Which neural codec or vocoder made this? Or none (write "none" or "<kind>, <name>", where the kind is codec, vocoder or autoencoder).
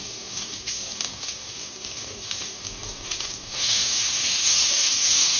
codec, DAC